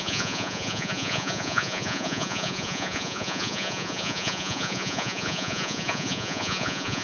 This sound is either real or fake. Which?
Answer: fake